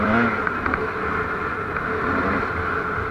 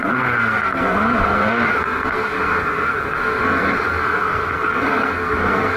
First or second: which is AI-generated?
second